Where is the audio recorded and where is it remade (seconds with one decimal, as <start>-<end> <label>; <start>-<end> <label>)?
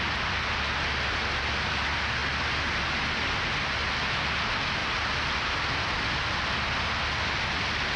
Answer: 0.0-8.0 recorded